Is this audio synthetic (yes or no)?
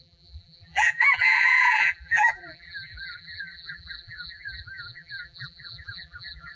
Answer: yes